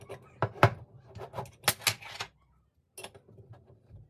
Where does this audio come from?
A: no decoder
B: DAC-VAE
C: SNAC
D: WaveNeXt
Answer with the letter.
A